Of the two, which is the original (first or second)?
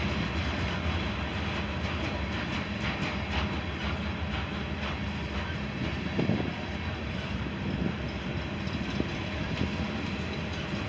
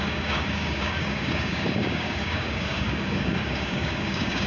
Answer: first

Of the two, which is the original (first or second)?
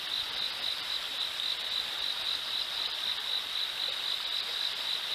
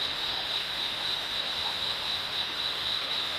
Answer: first